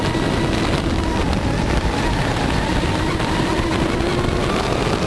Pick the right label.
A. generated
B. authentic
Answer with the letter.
B